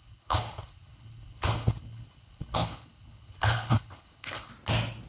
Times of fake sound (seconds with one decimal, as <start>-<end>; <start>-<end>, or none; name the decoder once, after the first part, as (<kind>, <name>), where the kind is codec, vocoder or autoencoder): 0.0-4.5 (codec, HILCodec)